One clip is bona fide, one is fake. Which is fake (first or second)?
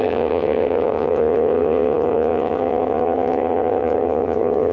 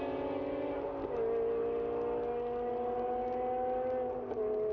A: first